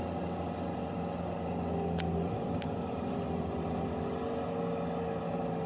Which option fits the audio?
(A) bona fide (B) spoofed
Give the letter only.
A